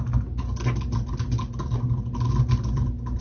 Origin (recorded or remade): recorded